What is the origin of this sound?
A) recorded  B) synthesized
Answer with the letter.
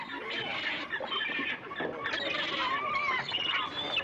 A